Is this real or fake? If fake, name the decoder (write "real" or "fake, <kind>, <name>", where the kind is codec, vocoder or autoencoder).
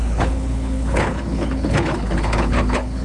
fake, codec, HILCodec